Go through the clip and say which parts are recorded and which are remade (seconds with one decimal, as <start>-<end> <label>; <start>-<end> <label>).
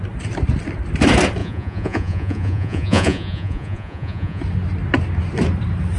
0.0-1.4 recorded; 1.4-4.4 remade; 4.4-6.0 recorded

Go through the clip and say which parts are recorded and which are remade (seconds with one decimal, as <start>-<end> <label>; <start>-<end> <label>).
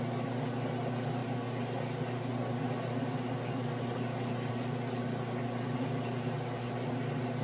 0.0-7.4 recorded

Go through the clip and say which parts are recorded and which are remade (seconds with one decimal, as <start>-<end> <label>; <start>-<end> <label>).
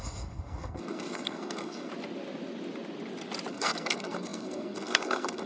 0.0-1.9 remade; 1.9-3.5 recorded; 3.5-5.5 remade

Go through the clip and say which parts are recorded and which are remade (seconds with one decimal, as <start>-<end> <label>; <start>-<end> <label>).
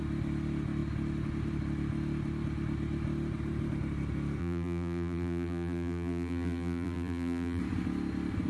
0.0-4.4 recorded; 4.4-7.6 remade; 7.6-8.5 recorded